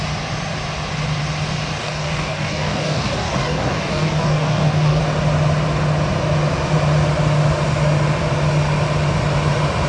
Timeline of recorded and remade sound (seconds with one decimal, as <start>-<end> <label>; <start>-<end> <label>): 0.0-1.8 recorded; 1.8-5.0 remade; 5.0-9.9 recorded